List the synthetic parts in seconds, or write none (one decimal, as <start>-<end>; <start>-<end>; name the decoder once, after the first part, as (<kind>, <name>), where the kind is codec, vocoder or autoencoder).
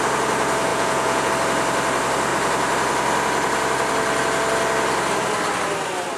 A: 0.7-1.3 (vocoder, Vocos)